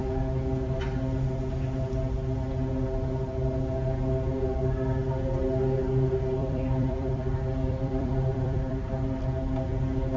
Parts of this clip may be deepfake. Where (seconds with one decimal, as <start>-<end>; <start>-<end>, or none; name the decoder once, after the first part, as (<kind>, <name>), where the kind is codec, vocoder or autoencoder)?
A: 6.4-8.9 (vocoder, BigVGAN v2)